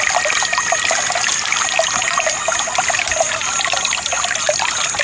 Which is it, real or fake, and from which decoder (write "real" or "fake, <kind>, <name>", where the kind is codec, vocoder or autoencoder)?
real